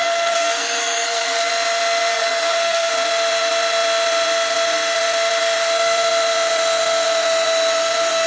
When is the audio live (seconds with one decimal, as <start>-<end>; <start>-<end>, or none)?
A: 1.5-2.1; 2.9-8.3